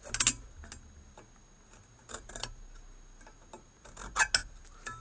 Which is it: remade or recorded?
recorded